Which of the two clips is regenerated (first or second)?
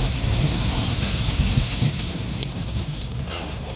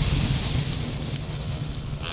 first